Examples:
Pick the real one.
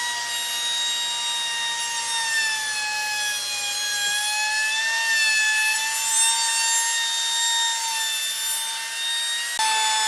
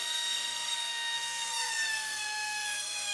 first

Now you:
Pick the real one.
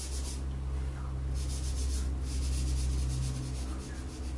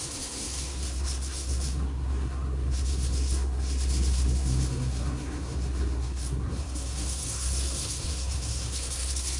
first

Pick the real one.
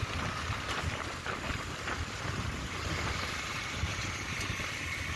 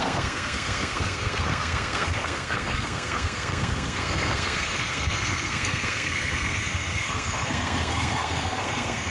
first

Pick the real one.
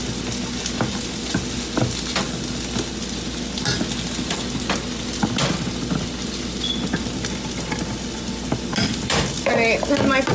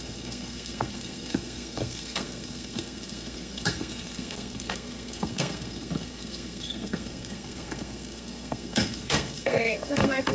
first